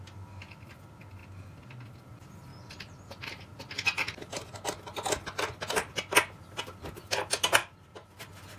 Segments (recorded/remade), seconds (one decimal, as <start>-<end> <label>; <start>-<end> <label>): 0.0-1.2 remade; 1.2-2.0 recorded; 2.0-2.5 remade; 2.5-3.1 recorded; 3.1-3.5 remade; 3.5-6.6 recorded; 6.6-7.6 remade; 7.6-8.2 recorded; 8.2-8.6 remade